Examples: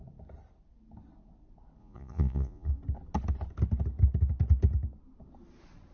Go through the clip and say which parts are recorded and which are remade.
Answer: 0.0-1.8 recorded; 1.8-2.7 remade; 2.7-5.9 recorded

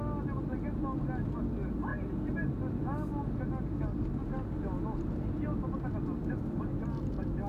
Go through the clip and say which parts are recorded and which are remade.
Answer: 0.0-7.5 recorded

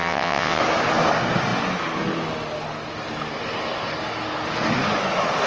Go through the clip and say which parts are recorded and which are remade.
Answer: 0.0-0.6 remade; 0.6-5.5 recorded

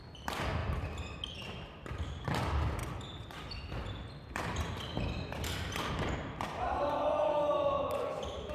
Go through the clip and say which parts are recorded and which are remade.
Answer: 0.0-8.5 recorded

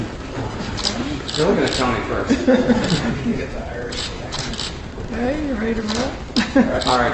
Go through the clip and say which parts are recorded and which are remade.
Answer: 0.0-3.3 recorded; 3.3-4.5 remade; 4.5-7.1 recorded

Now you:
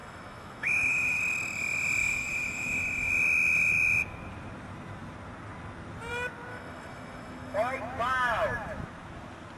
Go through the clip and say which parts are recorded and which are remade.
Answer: 0.0-1.2 remade; 1.2-2.0 recorded; 2.0-3.1 remade; 3.1-6.5 recorded; 6.5-7.8 remade; 7.8-9.6 recorded